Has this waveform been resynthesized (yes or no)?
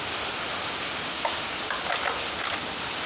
no